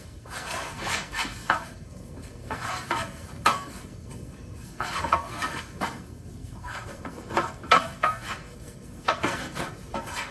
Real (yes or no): no